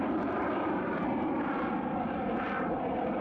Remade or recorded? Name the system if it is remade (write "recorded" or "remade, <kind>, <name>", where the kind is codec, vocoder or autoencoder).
remade, vocoder, BigVGAN v2